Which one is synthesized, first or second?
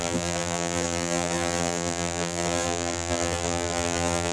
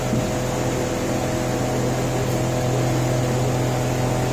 first